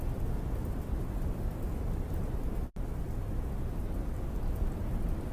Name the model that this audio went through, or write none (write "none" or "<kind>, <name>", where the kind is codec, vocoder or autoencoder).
none